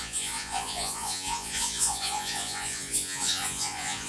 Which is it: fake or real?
fake